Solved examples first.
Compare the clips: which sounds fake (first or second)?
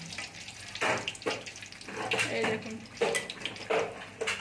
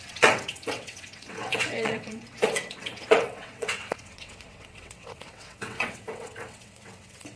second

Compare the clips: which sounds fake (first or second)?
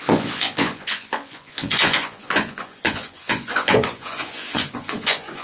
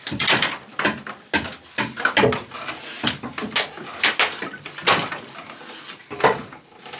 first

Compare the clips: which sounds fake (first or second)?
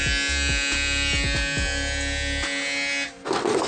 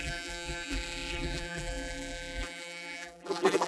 second